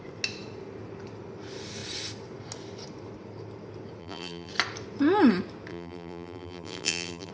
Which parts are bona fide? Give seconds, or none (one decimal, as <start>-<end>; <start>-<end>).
0.0-4.0; 4.5-5.7